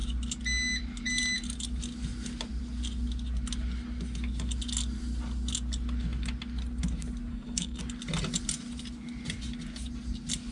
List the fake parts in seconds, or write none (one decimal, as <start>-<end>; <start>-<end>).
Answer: 7.3-7.8